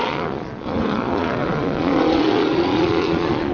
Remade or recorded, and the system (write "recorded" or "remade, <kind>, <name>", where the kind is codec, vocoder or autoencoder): remade, vocoder, Vocos